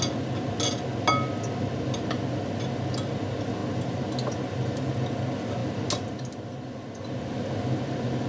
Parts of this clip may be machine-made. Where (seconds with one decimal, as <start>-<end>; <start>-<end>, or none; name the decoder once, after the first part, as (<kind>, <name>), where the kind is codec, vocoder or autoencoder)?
none